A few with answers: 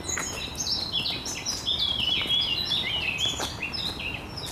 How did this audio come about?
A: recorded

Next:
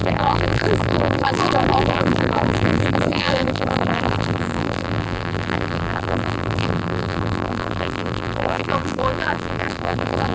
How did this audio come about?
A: remade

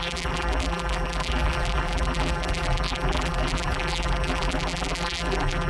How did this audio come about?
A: remade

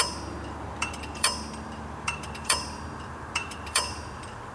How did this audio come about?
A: remade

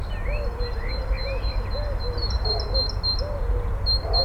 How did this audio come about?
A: recorded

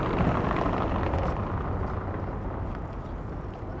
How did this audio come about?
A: recorded